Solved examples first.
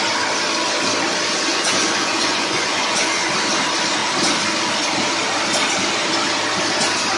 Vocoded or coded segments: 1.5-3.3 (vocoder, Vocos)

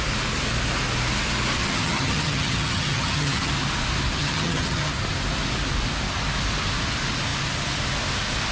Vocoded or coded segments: 1.6-3.5 (vocoder, HiFi-GAN); 4.2-4.9

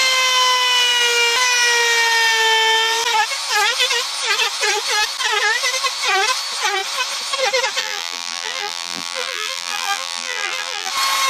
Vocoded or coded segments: 7.8-10.9 (vocoder, BigVGAN v2)

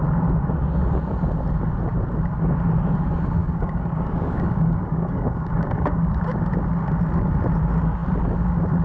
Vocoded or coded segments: 3.4-6.1 (codec, DAC)

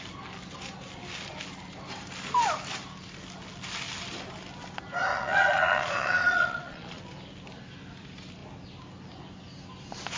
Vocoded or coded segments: 5.1-7.0 (vocoder, Vocos)

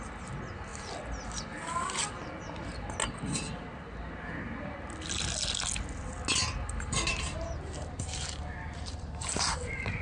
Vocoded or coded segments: 7.1-9.3 (vocoder, BigVGAN v2)

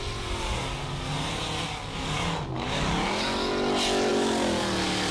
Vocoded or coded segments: 1.9-3.5 (codec, DAC); 4.1-5.1

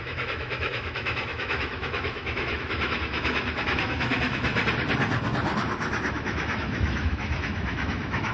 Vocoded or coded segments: 0.0-4.5 (autoencoder, DAC-VAE); 6.1-8.3